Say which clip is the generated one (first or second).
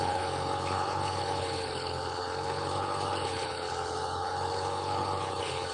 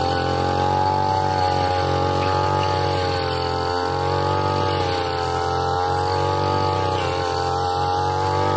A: first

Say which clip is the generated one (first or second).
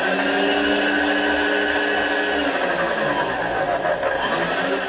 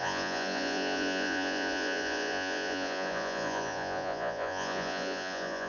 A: second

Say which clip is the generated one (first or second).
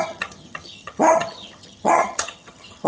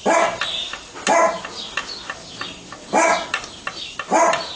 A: first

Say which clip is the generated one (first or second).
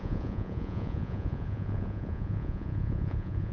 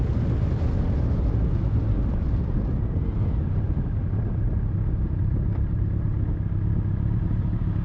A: first